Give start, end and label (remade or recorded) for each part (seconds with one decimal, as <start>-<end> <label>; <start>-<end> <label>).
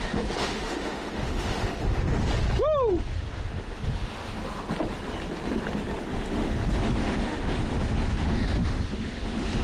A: 0.0-2.3 remade; 2.3-2.9 recorded; 2.9-4.4 remade; 4.4-6.0 recorded; 6.0-9.6 remade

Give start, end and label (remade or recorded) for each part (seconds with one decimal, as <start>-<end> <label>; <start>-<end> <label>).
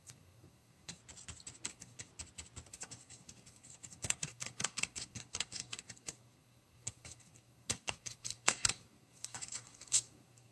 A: 0.0-1.0 remade; 1.0-1.7 recorded; 1.7-2.1 remade; 2.1-2.7 recorded; 2.7-10.5 remade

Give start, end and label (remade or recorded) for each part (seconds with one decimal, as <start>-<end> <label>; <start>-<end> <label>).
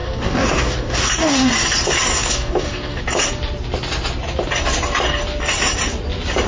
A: 0.0-1.5 remade; 1.5-2.1 recorded; 2.1-3.0 remade; 3.0-6.5 recorded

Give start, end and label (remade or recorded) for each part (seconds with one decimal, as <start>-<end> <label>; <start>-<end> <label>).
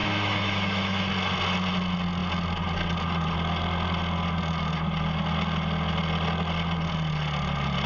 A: 0.0-1.1 remade; 1.1-7.9 recorded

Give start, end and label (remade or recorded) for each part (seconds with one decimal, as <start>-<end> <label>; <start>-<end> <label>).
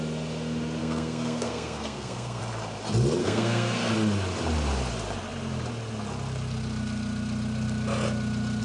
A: 0.0-0.8 recorded; 0.8-2.4 remade; 2.4-3.2 recorded; 3.2-3.9 remade; 3.9-8.6 recorded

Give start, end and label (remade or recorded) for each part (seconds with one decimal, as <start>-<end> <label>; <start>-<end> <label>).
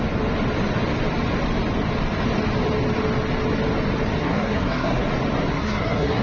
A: 0.0-4.2 recorded; 4.2-5.1 remade; 5.1-5.5 recorded; 5.5-6.2 remade